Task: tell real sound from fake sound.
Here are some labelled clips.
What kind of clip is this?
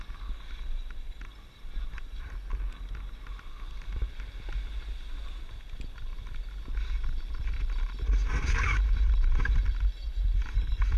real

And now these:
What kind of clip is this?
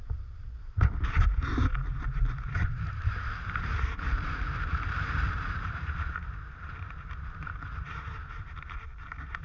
fake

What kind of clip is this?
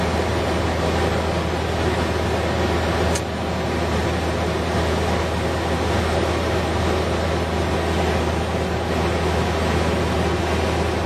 real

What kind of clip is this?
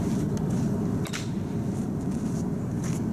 real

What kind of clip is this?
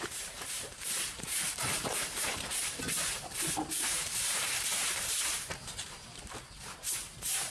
fake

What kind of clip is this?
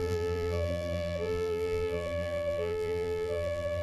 fake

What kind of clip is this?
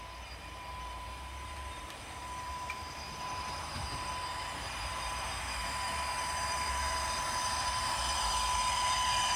fake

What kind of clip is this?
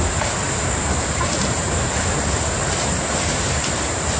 fake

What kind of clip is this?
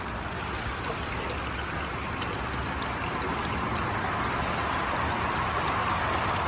real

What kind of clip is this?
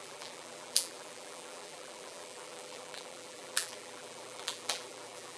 fake